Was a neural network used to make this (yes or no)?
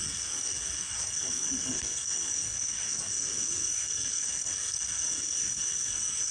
yes